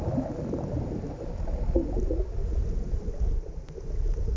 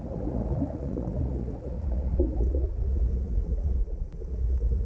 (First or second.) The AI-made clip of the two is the second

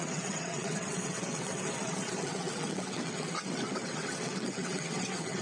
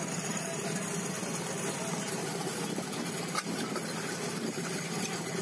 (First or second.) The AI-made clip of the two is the first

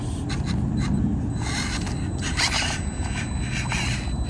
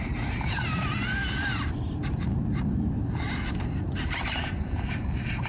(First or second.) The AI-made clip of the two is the second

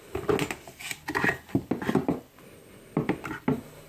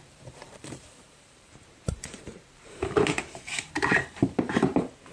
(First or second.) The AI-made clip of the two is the second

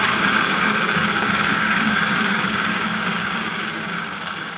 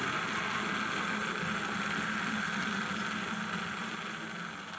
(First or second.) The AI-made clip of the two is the first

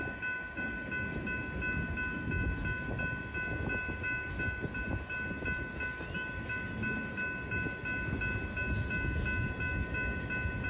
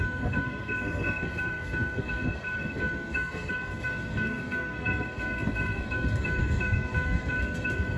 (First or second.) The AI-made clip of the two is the second